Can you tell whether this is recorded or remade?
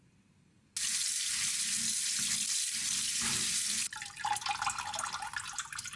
recorded